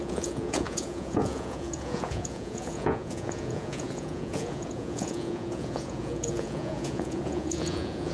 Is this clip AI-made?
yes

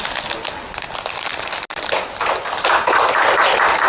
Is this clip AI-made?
no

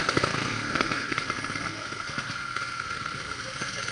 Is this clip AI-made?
yes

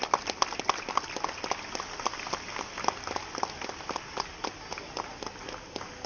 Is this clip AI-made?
no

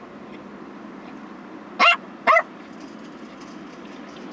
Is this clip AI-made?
no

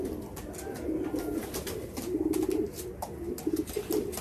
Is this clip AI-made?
no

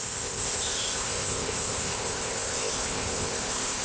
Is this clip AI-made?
yes